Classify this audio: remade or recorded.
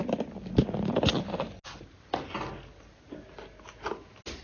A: recorded